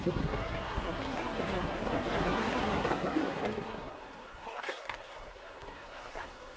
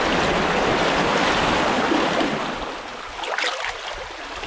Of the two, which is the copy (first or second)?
first